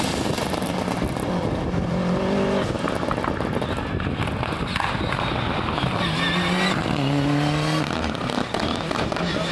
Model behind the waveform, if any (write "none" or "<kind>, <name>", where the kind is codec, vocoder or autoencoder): none